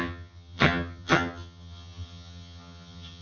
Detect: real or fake fake